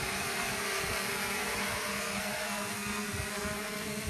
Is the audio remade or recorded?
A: remade